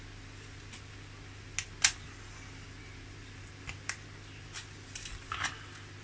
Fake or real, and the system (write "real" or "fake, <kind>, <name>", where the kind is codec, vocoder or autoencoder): real